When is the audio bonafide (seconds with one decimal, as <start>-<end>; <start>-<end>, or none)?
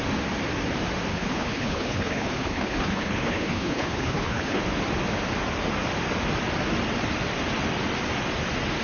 0.0-1.1; 4.6-8.8